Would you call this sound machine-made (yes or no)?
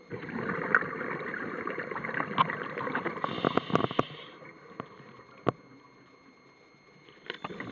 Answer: no